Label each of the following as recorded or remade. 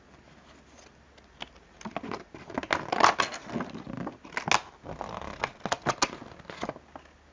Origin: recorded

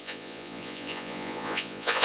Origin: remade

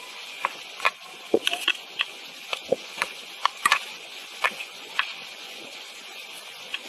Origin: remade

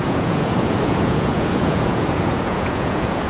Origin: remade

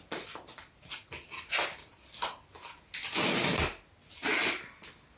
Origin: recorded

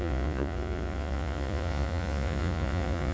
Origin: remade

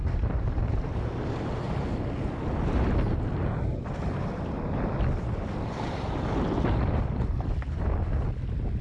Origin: recorded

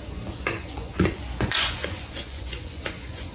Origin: remade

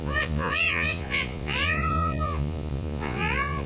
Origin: remade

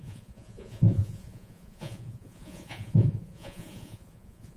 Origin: remade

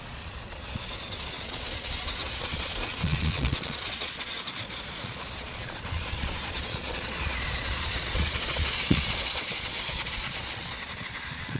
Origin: remade